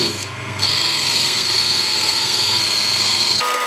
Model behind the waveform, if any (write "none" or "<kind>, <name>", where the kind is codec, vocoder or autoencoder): codec, SNAC